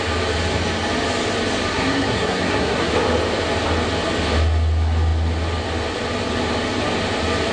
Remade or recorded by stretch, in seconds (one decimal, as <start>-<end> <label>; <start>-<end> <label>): 0.0-1.7 recorded; 1.7-2.9 remade; 2.9-7.5 recorded